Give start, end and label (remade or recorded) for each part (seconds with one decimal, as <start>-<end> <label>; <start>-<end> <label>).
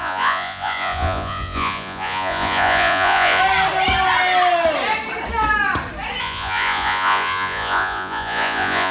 0.0-3.4 remade; 3.4-6.2 recorded; 6.2-8.9 remade